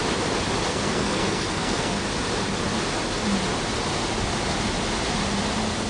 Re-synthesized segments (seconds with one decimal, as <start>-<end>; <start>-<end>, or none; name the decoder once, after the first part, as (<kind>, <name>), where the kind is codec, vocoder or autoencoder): 0.7-2.0 (codec, SNAC)